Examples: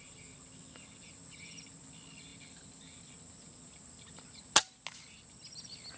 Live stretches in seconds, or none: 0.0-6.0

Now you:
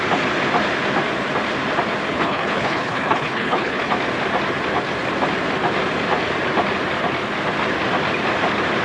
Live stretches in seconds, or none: 0.0-2.1; 3.9-8.8

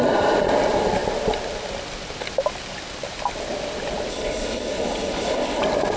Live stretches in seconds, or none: 0.0-4.1; 5.6-6.0

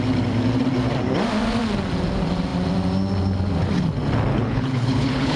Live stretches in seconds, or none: 0.0-4.3